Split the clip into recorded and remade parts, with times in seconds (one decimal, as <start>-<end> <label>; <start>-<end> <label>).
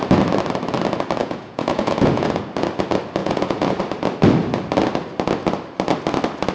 0.0-1.2 recorded; 1.2-2.4 remade; 2.4-3.2 recorded; 3.2-3.8 remade; 3.8-6.5 recorded